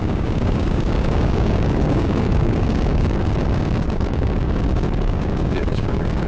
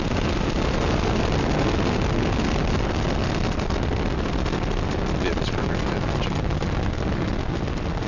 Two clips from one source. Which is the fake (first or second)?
first